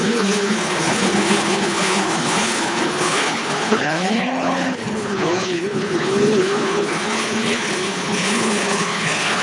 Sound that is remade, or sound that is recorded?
remade